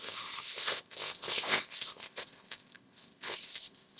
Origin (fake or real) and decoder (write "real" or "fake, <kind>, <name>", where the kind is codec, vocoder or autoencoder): fake, codec, ZipCodec